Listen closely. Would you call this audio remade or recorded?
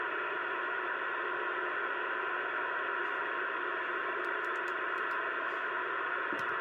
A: recorded